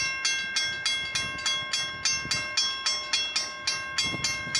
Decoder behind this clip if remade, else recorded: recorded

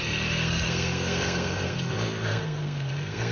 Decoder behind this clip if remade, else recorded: remade, codec, SNAC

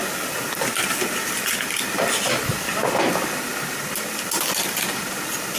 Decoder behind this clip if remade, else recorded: recorded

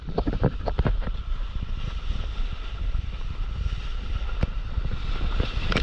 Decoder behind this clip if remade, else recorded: remade, vocoder, BigVGAN v2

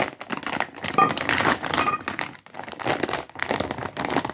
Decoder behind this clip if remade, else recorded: recorded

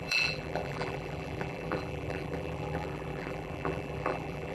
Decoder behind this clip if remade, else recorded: remade, vocoder, BigVGAN v2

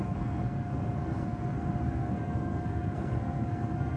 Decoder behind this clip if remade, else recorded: remade, codec, SNAC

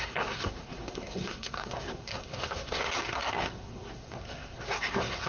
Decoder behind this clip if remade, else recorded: remade, codec, SNAC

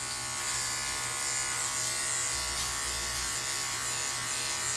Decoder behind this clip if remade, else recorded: recorded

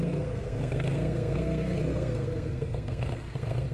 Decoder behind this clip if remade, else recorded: remade, codec, SNAC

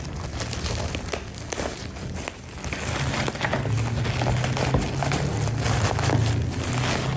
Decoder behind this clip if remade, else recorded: recorded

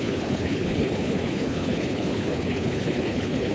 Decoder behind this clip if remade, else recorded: remade, codec, HILCodec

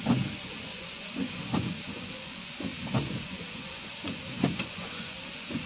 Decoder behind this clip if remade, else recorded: remade, vocoder, Vocos